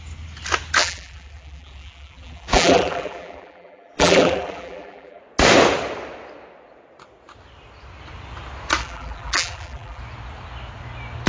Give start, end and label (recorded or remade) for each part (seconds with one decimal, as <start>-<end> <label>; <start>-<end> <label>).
0.0-0.8 recorded; 0.8-5.2 remade; 5.2-8.8 recorded; 8.8-10.0 remade; 10.0-11.3 recorded